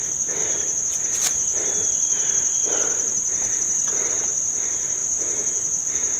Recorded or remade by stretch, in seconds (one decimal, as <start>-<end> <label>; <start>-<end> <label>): 0.0-6.2 recorded